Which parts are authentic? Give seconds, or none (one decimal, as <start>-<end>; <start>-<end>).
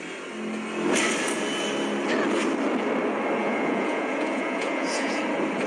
0.0-3.4; 5.2-5.7